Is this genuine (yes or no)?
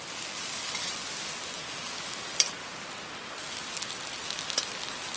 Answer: yes